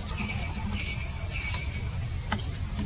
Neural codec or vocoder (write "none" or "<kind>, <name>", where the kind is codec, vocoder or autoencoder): none